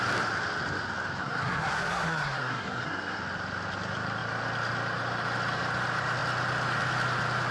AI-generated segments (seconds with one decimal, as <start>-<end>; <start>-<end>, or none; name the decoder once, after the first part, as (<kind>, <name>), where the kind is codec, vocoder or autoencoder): 1.2-3.2 (codec, SNAC)

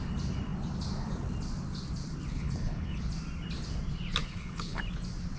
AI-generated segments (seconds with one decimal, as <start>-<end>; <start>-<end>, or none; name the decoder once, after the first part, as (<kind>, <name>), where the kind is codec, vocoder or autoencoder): 2.3-3.0 (codec, HILCodec); 4.2-4.8